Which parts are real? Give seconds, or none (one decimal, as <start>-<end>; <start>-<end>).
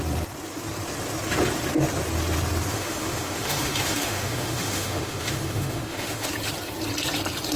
0.0-2.7; 6.3-7.6